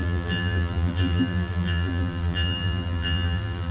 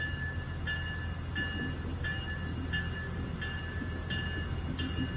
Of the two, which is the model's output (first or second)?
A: first